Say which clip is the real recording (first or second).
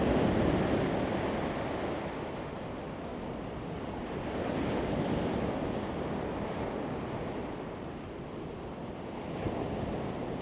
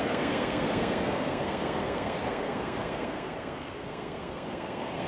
first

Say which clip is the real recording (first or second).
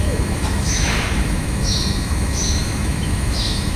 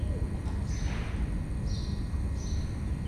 second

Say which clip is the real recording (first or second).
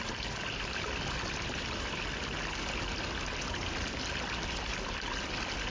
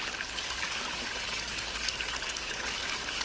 first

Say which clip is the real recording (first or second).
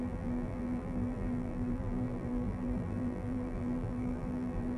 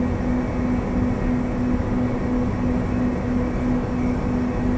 second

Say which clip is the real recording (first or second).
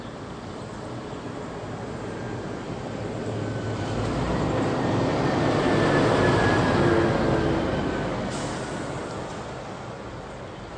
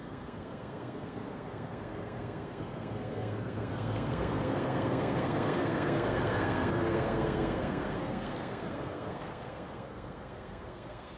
first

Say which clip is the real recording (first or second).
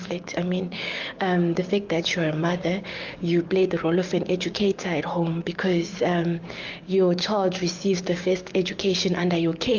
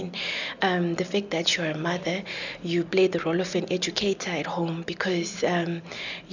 second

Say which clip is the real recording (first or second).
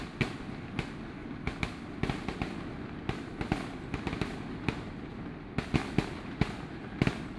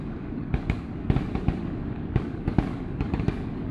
first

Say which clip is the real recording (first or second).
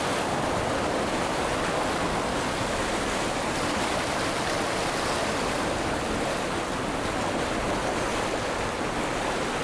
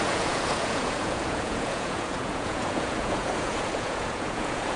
first